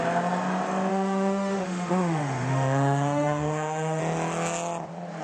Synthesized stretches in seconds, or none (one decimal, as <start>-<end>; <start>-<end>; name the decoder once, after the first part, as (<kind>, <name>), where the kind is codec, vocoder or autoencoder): 0.9-4.0 (autoencoder, DAC-VAE)